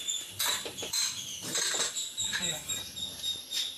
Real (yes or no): no